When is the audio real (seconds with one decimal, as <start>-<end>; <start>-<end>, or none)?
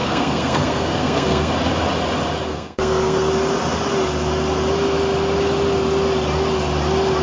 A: 1.5-2.5; 3.3-7.2